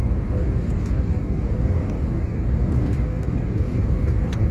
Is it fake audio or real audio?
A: fake